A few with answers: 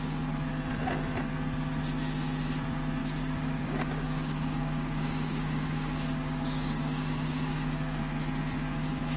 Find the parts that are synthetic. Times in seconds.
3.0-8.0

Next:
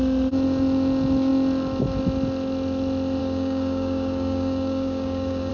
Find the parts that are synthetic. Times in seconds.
3.2-5.5

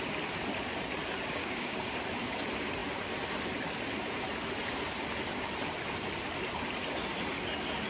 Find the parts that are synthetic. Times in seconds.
1.4-1.9